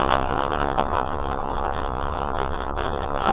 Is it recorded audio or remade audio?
remade